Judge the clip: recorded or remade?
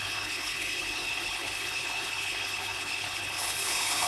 remade